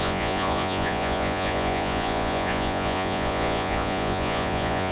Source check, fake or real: fake